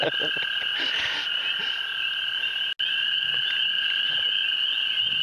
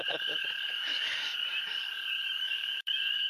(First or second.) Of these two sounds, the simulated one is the second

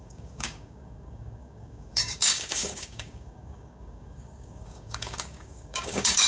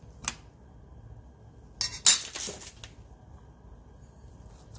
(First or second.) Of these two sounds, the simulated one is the first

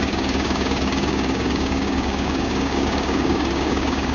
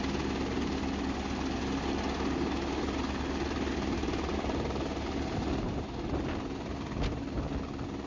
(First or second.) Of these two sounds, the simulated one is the first